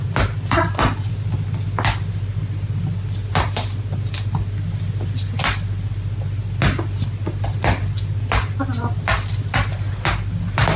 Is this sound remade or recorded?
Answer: recorded